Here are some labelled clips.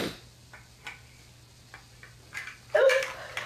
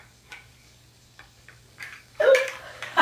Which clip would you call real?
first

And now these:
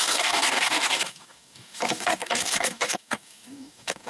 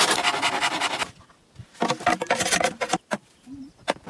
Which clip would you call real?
second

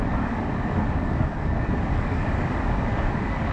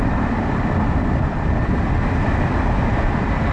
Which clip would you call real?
second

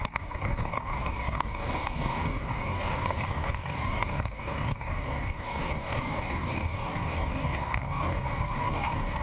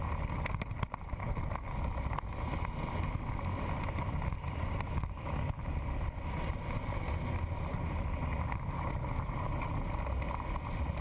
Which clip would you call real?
second